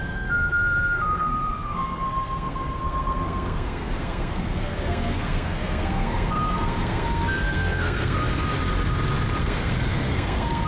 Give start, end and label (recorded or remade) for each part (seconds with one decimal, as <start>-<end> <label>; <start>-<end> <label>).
0.0-8.2 remade; 8.2-9.4 recorded; 9.4-10.7 remade